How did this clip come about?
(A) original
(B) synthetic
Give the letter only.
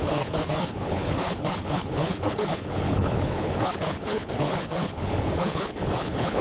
B